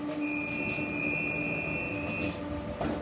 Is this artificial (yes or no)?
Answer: no